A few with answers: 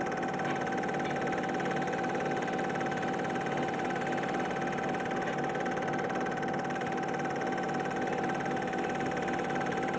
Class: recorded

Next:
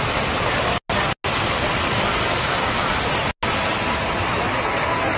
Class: recorded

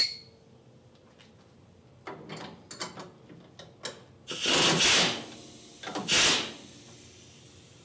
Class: recorded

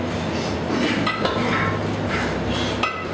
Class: recorded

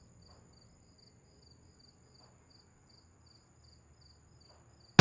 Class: recorded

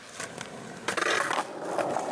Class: recorded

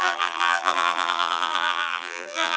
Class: remade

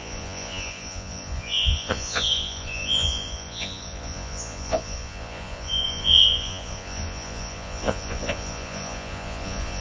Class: remade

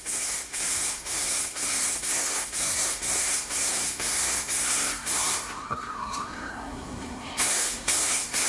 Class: remade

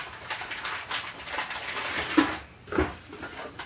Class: recorded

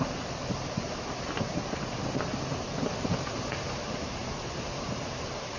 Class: remade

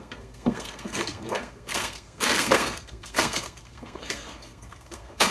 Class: remade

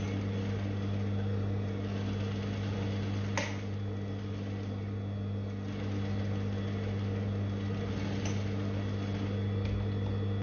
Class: recorded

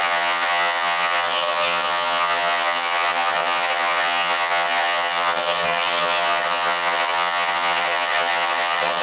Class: remade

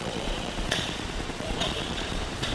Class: remade